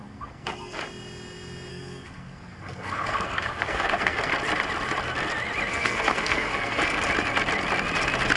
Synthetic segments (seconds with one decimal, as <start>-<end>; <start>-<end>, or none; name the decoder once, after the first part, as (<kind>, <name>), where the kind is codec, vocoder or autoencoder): 0.0-0.8 (codec, SNAC); 1.7-4.3; 5.7-7.0